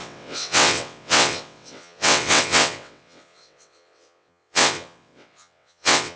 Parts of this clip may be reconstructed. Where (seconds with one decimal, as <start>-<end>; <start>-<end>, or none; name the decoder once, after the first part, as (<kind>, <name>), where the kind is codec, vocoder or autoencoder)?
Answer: 0.0-6.2 (vocoder, WaveNeXt)